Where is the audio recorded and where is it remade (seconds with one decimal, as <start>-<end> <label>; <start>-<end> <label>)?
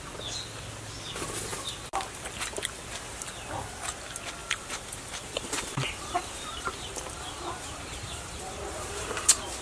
0.0-4.4 recorded; 4.4-9.2 remade; 9.2-9.6 recorded